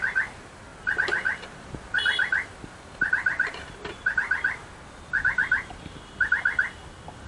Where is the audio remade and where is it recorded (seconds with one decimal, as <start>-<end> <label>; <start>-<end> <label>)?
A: 0.0-0.7 recorded; 0.7-4.0 remade; 4.0-7.3 recorded